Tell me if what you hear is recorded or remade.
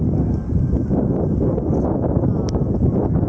recorded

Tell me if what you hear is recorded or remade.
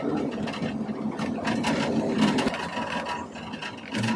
recorded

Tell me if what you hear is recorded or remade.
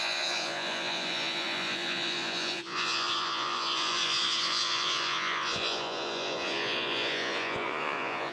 remade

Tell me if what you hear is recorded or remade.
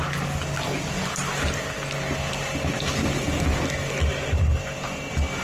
recorded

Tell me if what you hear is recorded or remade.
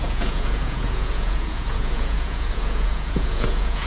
remade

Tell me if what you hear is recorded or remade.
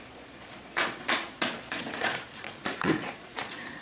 remade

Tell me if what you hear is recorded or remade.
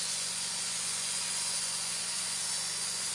remade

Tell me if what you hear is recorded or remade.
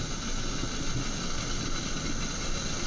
recorded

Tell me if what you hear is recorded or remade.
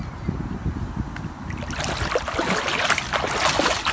recorded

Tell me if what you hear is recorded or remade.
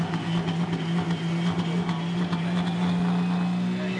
recorded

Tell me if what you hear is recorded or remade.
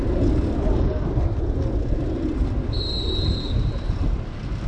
recorded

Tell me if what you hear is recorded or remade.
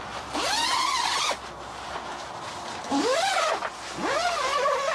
recorded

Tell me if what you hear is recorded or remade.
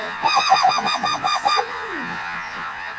remade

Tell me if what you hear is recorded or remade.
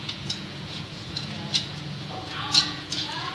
remade